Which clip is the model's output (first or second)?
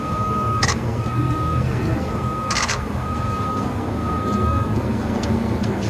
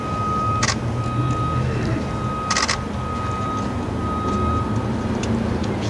first